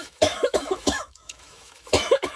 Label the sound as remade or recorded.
remade